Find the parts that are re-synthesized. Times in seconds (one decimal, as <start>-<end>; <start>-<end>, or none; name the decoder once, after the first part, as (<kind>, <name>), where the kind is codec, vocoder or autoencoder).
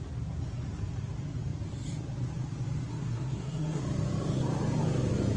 2.9-3.8 (codec, SNAC)